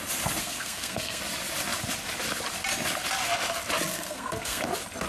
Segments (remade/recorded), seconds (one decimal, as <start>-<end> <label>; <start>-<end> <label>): 0.0-0.4 recorded; 0.4-1.2 remade; 1.2-3.9 recorded; 3.9-4.6 remade; 4.6-5.1 recorded